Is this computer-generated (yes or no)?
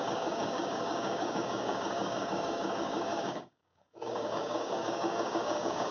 yes